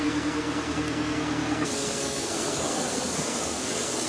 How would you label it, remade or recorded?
remade